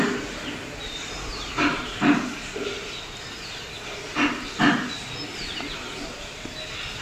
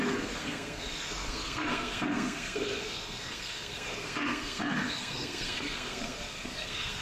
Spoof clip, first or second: second